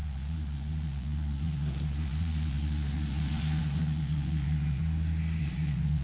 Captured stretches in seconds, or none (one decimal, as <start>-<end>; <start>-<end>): 4.8-5.4

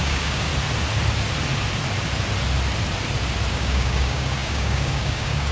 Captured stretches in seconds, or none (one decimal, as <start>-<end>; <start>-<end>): 0.5-3.5

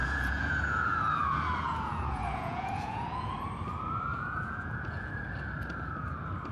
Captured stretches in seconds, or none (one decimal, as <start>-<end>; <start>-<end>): 3.4-4.1; 5.1-6.5

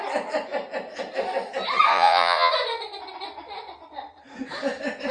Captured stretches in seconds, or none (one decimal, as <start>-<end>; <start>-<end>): 0.0-1.9; 2.5-5.1

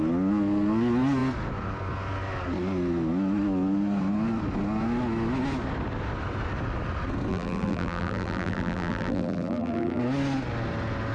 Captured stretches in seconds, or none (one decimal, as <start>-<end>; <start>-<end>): 0.0-7.3; 10.0-11.1

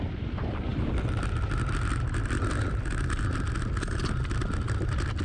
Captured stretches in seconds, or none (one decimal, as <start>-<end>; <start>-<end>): 0.0-5.2

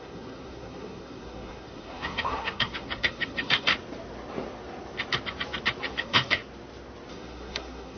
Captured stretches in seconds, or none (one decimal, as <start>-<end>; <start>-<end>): 3.7-5.9; 6.4-7.1